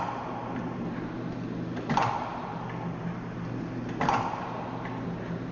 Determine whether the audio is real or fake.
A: real